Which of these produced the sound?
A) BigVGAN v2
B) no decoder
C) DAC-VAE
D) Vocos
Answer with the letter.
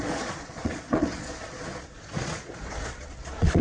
D